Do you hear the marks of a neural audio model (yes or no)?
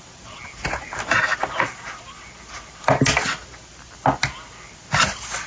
no